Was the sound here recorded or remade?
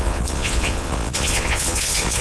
remade